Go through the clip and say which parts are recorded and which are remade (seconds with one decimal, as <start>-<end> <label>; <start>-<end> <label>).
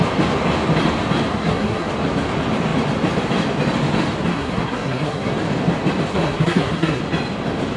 0.0-1.3 recorded; 1.3-1.9 remade; 1.9-4.3 recorded; 4.3-5.3 remade; 5.3-6.1 recorded; 6.1-7.0 remade; 7.0-7.8 recorded